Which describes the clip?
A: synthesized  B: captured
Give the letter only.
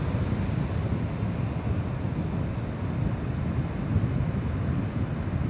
B